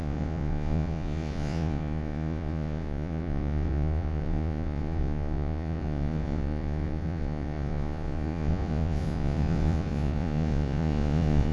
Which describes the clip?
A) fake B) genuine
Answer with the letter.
A